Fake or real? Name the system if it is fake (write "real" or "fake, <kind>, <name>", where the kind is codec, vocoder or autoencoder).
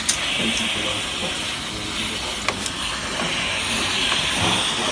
real